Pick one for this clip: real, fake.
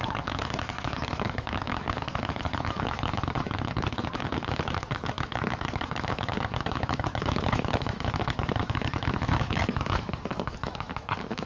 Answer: fake